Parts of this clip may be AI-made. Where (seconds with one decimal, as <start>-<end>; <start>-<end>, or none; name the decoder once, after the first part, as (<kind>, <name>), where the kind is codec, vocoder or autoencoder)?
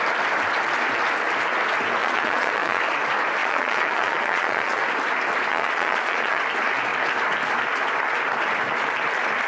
2.0-2.8 (vocoder, Vocos); 3.4-4.8; 5.5-6.4